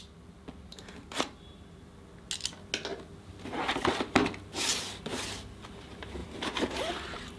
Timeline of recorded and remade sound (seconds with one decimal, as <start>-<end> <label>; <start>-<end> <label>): 0.0-0.7 recorded; 0.7-1.9 remade; 1.9-6.2 recorded; 6.2-6.9 remade; 6.9-7.4 recorded